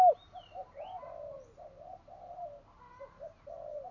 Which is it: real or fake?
real